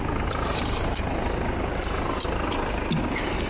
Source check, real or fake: real